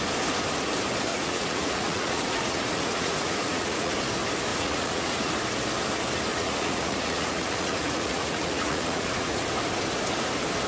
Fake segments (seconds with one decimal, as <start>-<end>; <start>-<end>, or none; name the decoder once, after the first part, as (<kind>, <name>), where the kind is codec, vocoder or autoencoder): 1.1-3.9 (vocoder, Vocos); 4.5-5.3; 6.3-9.5